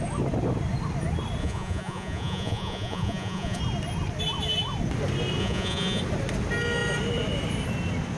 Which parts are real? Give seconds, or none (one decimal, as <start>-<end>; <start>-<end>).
0.0-1.4; 3.6-5.4; 6.0-8.2